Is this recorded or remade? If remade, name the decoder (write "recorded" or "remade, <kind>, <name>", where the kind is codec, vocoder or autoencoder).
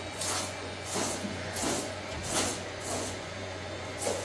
remade, vocoder, Vocos